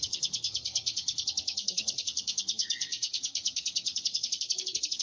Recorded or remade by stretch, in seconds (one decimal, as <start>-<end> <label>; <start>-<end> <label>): 0.0-5.0 remade